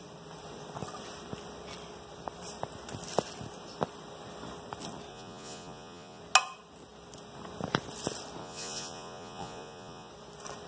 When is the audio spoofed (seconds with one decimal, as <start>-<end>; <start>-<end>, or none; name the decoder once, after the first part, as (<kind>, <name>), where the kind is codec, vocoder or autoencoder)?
5.1-6.2 (vocoder, Vocos); 8.4-10.1